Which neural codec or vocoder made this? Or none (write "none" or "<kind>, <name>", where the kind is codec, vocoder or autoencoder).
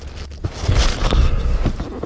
none